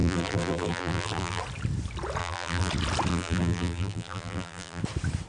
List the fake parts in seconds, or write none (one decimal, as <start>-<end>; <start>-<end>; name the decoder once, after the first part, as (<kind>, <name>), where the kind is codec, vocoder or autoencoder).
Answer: 0.0-1.4 (vocoder, BigVGAN v2); 2.2-2.7; 3.1-4.8